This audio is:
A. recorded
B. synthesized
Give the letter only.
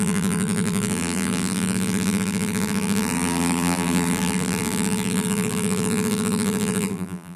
B